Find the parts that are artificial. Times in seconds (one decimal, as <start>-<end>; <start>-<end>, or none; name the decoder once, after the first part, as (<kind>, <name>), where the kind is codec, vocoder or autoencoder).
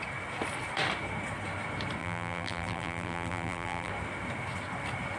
2.0-3.9 (vocoder, BigVGAN v2)